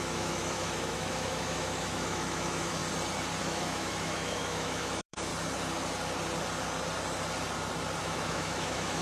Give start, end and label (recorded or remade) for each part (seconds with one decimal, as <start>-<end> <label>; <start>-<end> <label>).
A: 0.0-2.8 remade; 2.8-3.4 recorded; 3.4-5.3 remade; 5.3-8.0 recorded; 8.0-9.0 remade